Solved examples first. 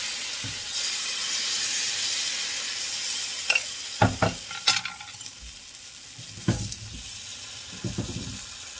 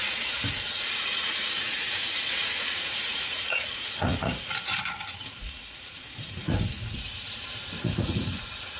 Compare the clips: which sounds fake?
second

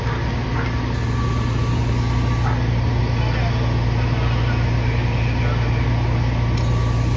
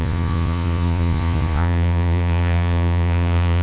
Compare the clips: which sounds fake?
second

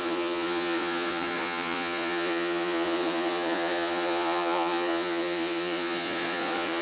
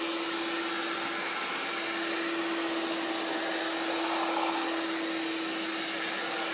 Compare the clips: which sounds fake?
first